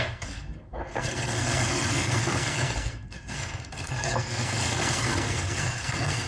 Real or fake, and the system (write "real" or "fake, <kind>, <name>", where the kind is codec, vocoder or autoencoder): fake, codec, SNAC